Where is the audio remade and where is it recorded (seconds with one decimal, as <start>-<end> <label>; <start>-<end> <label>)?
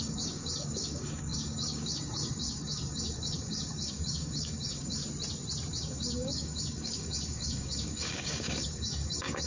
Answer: 0.0-5.0 remade; 5.0-5.7 recorded; 5.7-9.5 remade